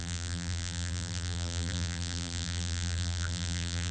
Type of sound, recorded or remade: remade